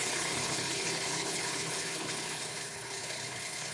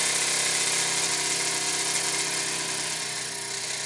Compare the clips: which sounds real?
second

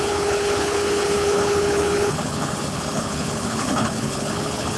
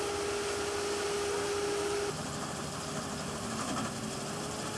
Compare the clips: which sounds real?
second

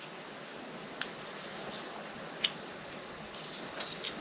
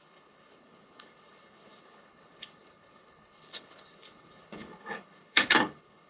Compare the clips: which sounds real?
first